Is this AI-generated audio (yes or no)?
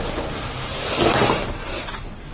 no